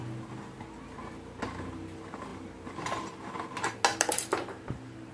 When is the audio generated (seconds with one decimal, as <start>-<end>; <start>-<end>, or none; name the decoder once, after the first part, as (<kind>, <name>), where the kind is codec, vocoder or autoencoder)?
3.9-5.1 (vocoder, BigVGAN v2)